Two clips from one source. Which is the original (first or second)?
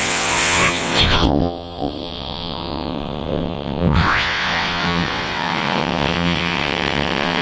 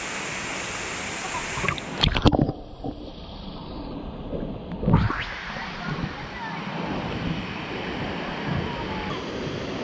second